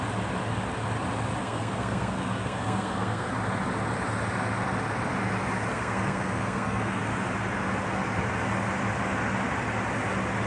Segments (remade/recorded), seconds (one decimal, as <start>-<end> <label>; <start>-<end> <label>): 0.0-1.4 recorded; 1.4-3.3 remade; 3.3-5.7 recorded; 5.7-7.0 remade; 7.0-10.5 recorded